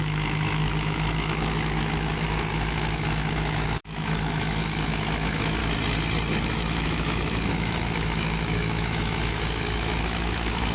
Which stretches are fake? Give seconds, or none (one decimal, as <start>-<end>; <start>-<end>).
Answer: 0.0-5.6; 6.4-10.7